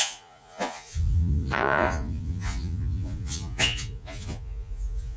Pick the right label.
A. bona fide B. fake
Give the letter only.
B